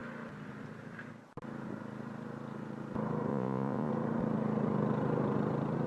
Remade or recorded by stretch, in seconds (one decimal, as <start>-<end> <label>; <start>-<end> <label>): 0.0-3.3 recorded; 3.3-3.9 remade; 3.9-5.9 recorded